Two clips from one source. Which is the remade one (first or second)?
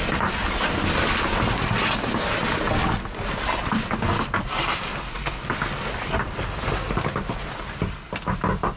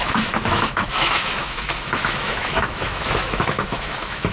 second